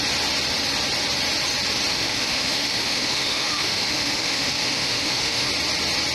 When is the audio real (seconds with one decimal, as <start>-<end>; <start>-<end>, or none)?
0.0-1.9; 5.5-6.1

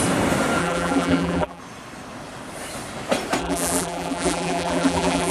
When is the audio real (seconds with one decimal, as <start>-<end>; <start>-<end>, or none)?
0.0-0.6; 1.6-3.4

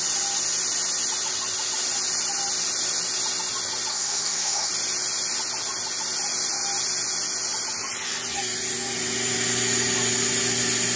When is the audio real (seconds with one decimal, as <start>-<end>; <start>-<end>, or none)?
0.0-3.9; 4.7-11.0

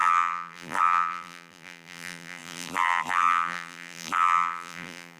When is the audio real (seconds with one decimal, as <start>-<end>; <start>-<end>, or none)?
none

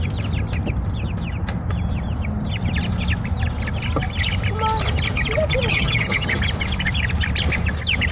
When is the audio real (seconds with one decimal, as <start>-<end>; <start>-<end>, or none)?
0.0-5.7; 6.4-8.1